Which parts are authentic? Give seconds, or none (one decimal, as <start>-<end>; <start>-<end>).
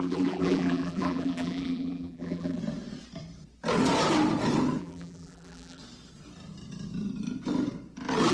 2.6-4.8; 5.8-8.3